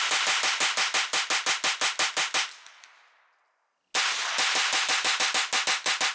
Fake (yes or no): no